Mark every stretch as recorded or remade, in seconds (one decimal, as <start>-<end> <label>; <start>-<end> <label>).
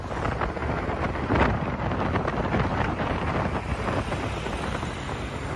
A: 0.0-0.6 recorded; 0.6-2.0 remade; 2.0-2.7 recorded; 2.7-3.3 remade; 3.3-5.6 recorded